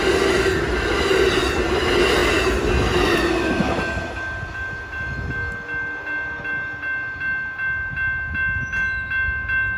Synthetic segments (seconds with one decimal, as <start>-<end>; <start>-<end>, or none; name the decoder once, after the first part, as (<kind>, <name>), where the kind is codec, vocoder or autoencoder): none